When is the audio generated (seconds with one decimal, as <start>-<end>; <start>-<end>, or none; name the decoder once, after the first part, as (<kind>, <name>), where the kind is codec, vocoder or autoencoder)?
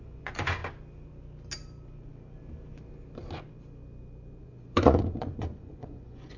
0.0-0.6 (vocoder, Vocos); 4.4-6.4